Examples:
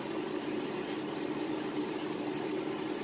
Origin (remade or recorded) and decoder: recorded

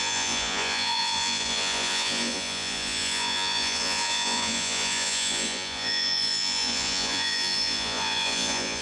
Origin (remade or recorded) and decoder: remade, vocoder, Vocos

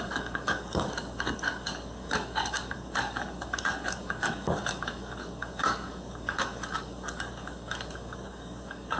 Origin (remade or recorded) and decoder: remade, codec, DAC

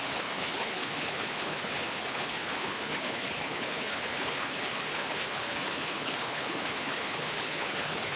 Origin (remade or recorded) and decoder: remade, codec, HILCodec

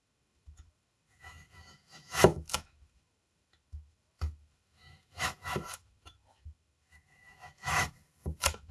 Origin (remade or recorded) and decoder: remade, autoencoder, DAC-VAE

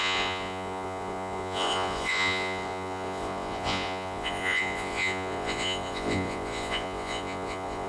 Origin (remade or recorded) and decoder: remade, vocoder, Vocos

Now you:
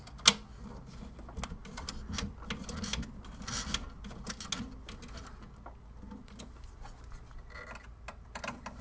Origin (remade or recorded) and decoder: recorded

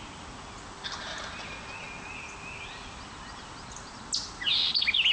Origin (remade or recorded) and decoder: recorded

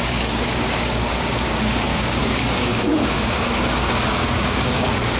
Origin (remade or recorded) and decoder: remade, codec, DAC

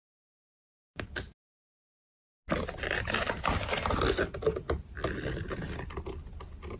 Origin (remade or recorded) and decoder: recorded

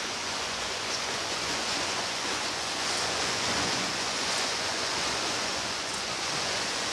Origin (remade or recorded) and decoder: remade, vocoder, Vocos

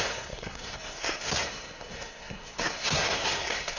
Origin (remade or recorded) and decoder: remade, codec, SNAC